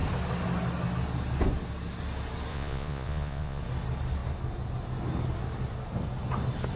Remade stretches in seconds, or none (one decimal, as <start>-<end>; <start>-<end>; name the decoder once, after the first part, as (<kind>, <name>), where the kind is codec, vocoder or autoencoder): 2.5-3.6 (vocoder, Vocos)